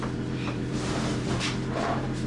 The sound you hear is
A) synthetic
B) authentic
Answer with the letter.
A